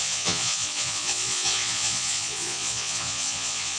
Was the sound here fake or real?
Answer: fake